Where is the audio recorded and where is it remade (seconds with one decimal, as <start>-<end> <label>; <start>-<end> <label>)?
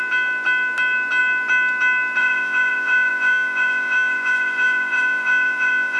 0.0-2.2 recorded; 2.2-6.0 remade